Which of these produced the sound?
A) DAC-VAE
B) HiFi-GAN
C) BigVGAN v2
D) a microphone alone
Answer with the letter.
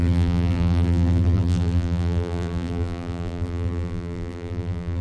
C